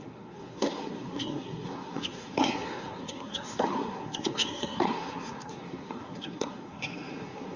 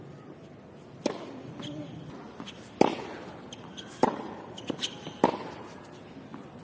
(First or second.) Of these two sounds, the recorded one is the second